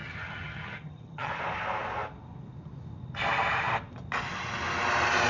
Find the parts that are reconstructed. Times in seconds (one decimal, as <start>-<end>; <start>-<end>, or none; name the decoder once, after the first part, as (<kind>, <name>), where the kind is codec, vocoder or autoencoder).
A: 0.0-1.3 (vocoder, HiFi-GAN)